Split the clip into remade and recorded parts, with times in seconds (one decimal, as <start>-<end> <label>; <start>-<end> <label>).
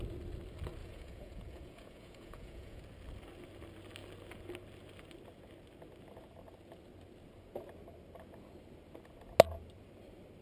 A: 0.0-0.8 recorded; 0.8-2.8 remade; 2.8-10.4 recorded